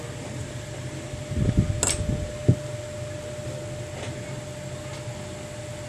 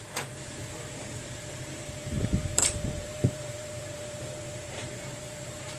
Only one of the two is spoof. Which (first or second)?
second